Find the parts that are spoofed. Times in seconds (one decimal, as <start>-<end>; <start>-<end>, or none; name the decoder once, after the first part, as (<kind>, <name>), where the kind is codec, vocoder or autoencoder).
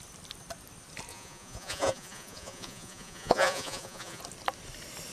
1.1-4.2 (vocoder, Vocos)